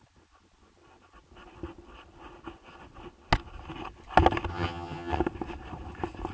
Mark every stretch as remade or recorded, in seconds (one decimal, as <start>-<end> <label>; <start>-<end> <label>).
0.0-4.5 recorded; 4.5-5.2 remade; 5.2-6.3 recorded

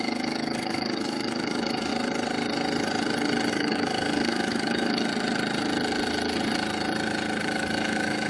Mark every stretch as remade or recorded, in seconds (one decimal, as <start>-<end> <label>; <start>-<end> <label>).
0.0-1.9 remade; 1.9-3.5 recorded; 3.5-5.1 remade; 5.1-7.4 recorded; 7.4-8.3 remade